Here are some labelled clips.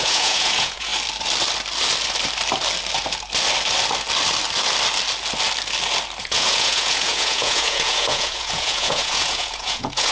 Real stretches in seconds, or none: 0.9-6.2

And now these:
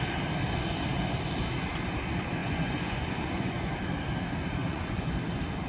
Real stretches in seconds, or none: 0.0-2.4; 3.7-4.6; 5.1-5.7

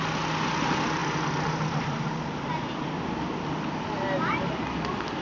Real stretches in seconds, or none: 0.0-5.2